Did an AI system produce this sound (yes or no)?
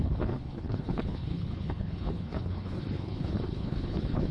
yes